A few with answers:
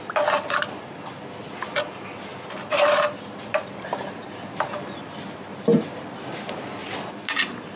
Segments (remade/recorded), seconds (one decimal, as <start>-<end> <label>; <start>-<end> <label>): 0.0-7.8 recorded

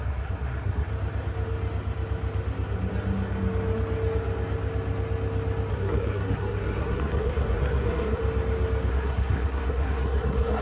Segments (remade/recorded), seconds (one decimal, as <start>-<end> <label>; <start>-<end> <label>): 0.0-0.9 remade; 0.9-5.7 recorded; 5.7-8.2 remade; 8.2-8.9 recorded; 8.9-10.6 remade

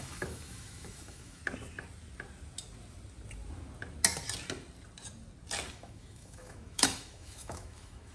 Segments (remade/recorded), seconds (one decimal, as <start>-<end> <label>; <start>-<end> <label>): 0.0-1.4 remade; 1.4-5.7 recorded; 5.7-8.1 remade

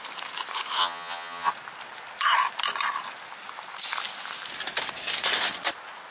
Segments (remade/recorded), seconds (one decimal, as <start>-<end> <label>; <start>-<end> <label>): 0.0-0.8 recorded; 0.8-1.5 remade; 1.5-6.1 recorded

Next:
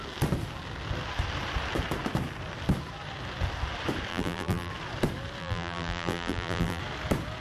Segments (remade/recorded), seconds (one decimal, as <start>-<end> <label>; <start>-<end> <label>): 0.0-4.1 recorded; 4.1-4.7 remade; 4.7-5.4 recorded; 5.4-6.8 remade; 6.8-7.4 recorded

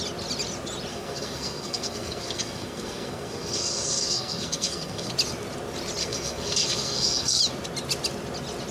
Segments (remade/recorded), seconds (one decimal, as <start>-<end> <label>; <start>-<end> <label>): 0.0-0.9 recorded; 0.9-5.1 remade; 5.1-6.0 recorded; 6.0-7.4 remade; 7.4-8.7 recorded